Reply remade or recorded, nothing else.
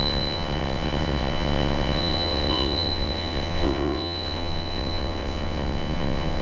remade